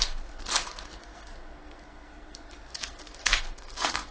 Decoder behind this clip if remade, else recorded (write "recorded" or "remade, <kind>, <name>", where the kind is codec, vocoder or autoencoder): remade, codec, SNAC